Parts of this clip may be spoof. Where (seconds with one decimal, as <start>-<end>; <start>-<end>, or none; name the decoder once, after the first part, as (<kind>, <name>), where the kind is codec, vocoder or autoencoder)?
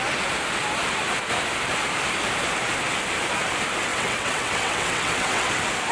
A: 3.9-5.5 (vocoder, WaveNeXt)